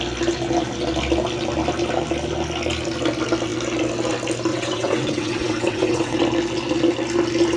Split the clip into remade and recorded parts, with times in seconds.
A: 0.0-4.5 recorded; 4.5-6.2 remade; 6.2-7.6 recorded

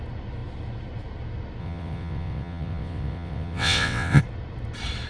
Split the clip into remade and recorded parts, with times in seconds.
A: 0.0-1.6 recorded; 1.6-4.2 remade; 4.2-5.1 recorded

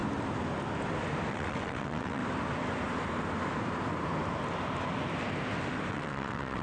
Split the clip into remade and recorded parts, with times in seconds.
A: 0.0-1.3 recorded; 1.3-2.2 remade; 2.2-5.9 recorded; 5.9-6.6 remade

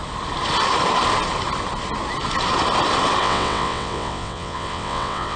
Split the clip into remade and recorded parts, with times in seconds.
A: 0.0-3.2 recorded; 3.2-5.4 remade

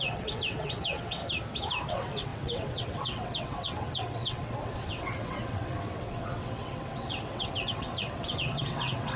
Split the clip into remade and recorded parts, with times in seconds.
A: 0.0-1.2 remade; 1.2-1.9 recorded; 1.9-9.2 remade